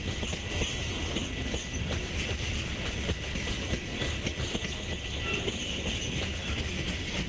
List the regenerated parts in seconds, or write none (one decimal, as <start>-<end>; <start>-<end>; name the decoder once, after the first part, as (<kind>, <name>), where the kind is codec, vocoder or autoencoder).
6.4-7.3 (vocoder, BigVGAN v2)